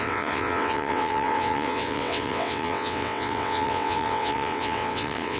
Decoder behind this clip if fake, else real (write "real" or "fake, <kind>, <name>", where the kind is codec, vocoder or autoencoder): fake, vocoder, WaveNeXt